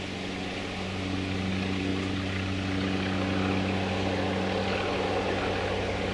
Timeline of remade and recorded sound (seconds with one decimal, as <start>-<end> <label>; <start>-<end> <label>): 0.0-6.1 recorded